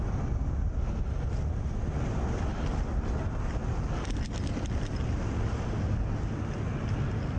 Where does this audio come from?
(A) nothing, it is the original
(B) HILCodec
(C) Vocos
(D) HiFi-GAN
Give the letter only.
A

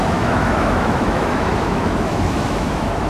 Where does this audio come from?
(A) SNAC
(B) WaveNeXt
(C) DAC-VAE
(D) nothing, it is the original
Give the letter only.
C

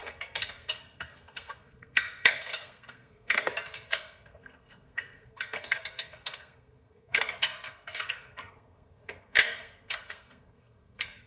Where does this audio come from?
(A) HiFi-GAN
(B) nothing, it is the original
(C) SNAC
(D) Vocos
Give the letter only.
C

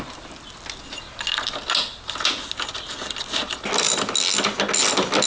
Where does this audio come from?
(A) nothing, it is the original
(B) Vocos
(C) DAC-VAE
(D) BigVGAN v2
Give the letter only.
A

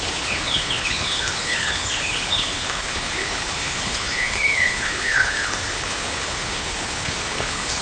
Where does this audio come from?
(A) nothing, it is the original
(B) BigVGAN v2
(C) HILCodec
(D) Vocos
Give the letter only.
C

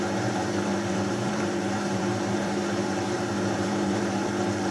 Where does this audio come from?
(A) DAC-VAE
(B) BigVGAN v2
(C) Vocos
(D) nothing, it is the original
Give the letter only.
B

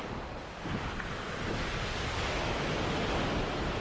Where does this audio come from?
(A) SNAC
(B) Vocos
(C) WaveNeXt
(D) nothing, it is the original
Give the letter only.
D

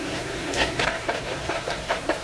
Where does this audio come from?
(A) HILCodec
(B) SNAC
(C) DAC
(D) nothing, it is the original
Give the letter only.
B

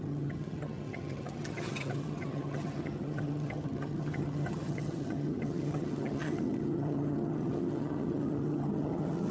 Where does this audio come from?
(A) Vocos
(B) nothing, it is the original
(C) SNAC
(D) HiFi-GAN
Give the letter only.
D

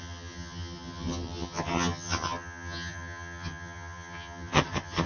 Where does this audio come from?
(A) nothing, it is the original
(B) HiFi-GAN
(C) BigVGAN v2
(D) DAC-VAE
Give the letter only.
B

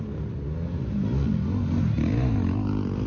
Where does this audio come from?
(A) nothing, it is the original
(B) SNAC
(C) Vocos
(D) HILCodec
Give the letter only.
A